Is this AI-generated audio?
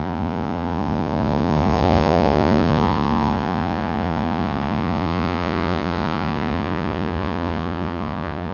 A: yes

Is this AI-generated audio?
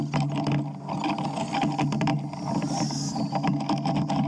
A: no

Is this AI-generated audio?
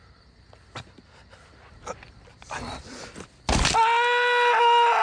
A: no